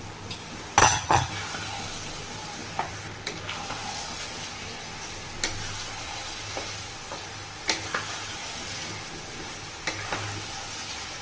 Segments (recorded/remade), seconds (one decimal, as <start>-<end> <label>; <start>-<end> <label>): 0.0-0.8 recorded; 0.8-1.3 remade; 1.3-11.2 recorded